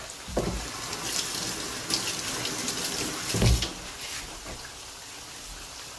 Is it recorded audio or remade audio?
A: recorded